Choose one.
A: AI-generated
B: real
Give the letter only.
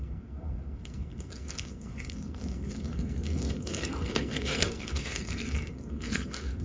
A